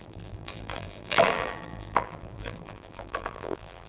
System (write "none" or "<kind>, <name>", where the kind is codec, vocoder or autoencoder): vocoder, BigVGAN v2